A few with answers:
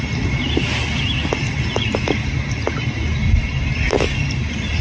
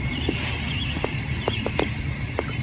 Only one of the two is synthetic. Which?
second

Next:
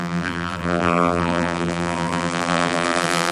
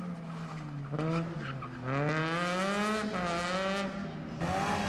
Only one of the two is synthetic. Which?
first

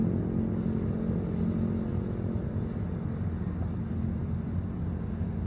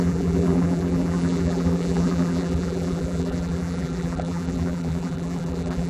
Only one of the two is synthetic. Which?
second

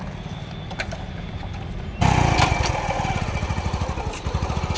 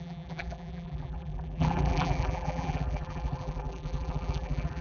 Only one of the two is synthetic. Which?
second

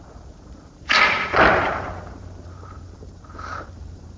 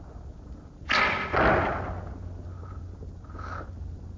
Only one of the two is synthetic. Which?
first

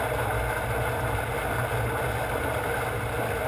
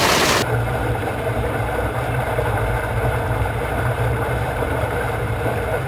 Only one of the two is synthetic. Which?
second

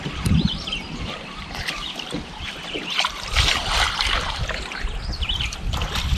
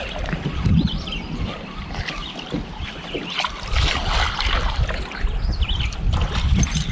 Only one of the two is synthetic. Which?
first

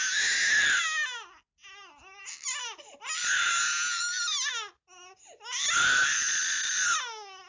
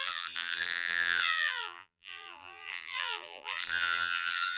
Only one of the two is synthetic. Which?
second